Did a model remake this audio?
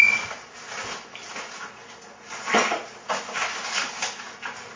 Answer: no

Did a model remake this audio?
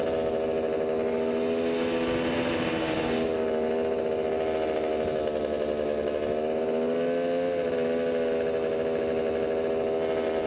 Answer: no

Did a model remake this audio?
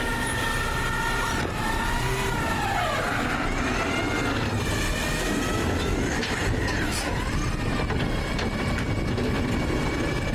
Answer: no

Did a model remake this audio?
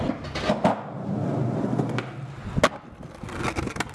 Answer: no